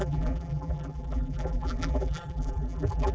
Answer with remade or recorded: remade